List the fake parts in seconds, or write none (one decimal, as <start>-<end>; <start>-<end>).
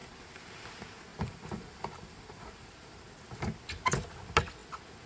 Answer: 0.0-0.6; 1.1-2.9